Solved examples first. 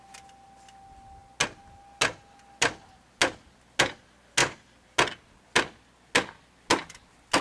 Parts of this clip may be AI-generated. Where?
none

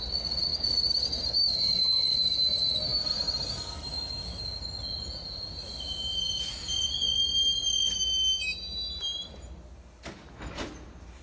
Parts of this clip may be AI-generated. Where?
0.5-1.2 (vocoder, BigVGAN v2)

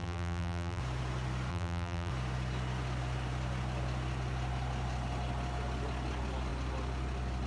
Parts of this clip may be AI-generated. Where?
0.0-0.8 (vocoder, BigVGAN v2); 1.5-2.1

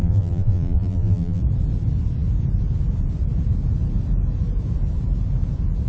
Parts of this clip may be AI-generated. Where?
0.0-1.4 (vocoder, BigVGAN v2)

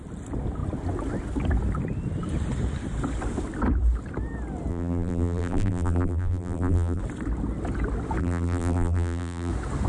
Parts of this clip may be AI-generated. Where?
4.7-7.0 (vocoder, BigVGAN v2); 8.2-9.5

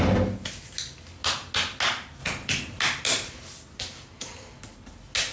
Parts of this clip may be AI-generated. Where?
2.2-2.8 (vocoder, BigVGAN v2)